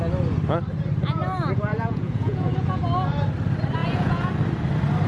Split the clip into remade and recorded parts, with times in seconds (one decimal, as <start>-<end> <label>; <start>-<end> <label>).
0.0-1.7 recorded; 1.7-2.8 remade; 2.8-3.8 recorded; 3.8-4.3 remade; 4.3-5.1 recorded